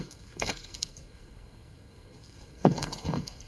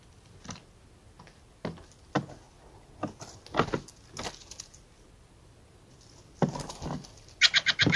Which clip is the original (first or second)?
second